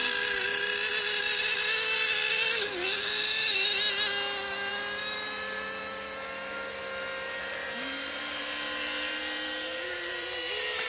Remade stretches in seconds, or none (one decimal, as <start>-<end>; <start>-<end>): none